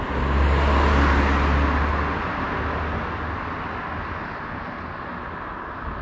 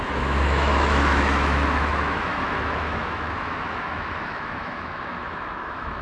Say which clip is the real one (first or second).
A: first